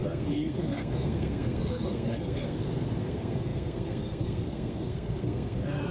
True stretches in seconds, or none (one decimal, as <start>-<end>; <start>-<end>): none